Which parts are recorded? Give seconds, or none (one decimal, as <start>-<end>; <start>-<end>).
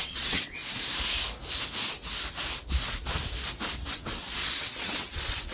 0.6-3.9